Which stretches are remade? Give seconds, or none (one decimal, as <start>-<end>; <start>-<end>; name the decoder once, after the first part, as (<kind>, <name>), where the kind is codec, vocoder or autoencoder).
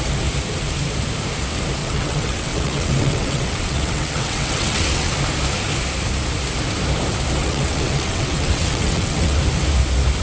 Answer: 1.8-5.1 (vocoder, WaveNeXt); 7.4-9.4